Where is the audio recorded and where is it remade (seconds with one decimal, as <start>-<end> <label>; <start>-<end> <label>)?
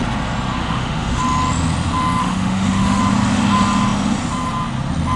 0.0-0.6 recorded; 0.6-1.2 remade; 1.2-2.2 recorded; 2.2-3.0 remade; 3.0-5.2 recorded